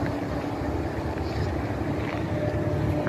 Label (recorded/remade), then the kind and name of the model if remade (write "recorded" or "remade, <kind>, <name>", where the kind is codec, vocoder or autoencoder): recorded